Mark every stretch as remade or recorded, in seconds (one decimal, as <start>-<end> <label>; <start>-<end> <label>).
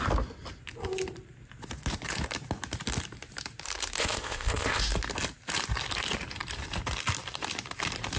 0.0-4.0 recorded; 4.0-4.8 remade; 4.8-8.2 recorded